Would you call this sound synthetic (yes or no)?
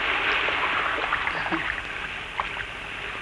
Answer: no